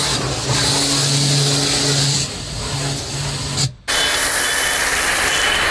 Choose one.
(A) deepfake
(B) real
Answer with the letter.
B